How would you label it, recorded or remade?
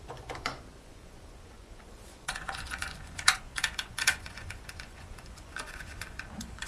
remade